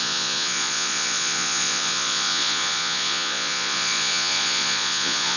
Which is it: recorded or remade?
remade